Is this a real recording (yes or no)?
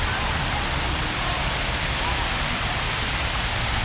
yes